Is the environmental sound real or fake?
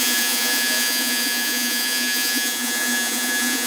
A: fake